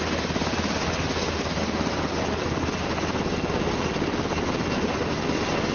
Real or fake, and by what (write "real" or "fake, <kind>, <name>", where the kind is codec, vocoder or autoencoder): real